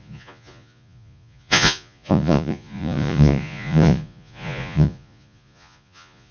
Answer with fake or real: fake